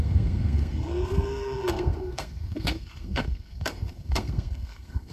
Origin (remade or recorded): remade